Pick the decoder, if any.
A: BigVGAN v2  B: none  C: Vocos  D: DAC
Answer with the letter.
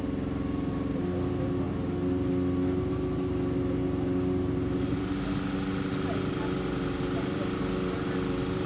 B